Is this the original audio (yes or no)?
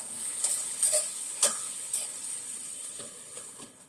no